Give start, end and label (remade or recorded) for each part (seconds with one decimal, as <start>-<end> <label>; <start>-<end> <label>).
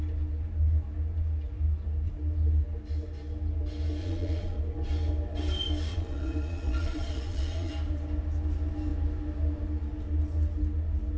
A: 0.0-4.0 recorded; 4.0-4.6 remade; 4.6-5.9 recorded; 5.9-7.7 remade; 7.7-11.2 recorded